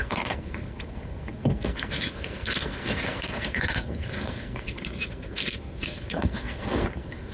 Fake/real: fake